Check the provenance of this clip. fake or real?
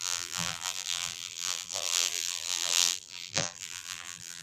fake